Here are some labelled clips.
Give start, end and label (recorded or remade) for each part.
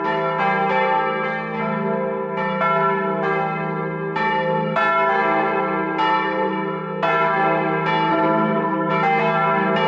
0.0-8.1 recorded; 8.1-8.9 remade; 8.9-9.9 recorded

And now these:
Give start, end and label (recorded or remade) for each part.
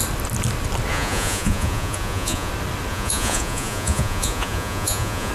0.0-0.9 recorded; 0.9-2.5 remade; 2.5-2.9 recorded; 2.9-5.3 remade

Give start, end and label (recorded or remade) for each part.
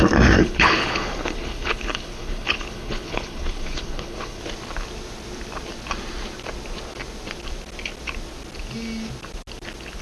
0.0-0.4 recorded; 0.4-4.4 remade; 4.4-10.0 recorded